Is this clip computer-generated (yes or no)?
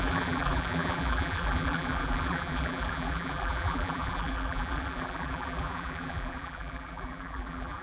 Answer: yes